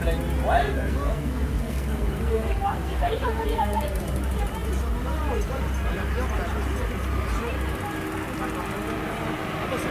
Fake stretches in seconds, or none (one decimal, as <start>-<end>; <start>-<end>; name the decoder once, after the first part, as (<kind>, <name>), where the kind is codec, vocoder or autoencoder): 0.6-4.0 (codec, SNAC)